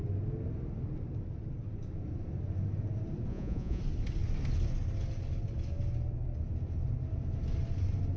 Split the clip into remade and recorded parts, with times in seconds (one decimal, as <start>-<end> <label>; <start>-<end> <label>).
0.0-3.3 recorded; 3.3-3.8 remade; 3.8-8.2 recorded